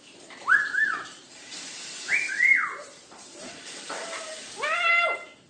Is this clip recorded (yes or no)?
no